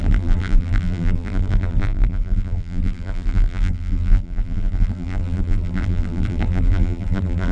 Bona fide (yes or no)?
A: no